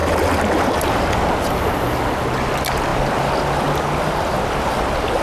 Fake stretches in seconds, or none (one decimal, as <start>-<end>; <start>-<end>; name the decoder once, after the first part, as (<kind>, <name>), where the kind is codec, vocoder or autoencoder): none